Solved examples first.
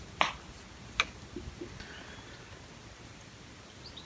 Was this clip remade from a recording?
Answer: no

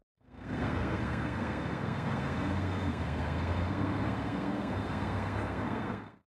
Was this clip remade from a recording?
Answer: yes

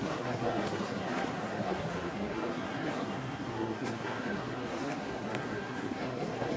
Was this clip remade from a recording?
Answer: yes